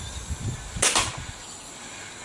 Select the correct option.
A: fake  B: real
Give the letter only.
B